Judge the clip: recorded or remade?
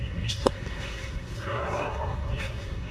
remade